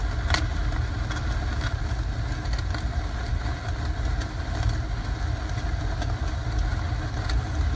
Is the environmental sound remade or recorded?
recorded